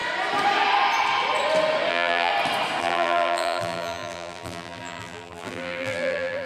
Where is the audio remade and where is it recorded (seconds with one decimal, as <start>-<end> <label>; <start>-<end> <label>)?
0.0-1.9 recorded; 1.9-2.3 remade; 2.3-2.8 recorded; 2.8-6.5 remade